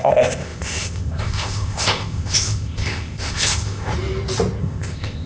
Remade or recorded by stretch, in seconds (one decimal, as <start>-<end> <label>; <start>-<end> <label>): 0.0-3.9 remade; 3.9-4.6 recorded; 4.6-5.3 remade